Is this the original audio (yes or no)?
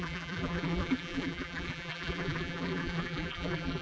no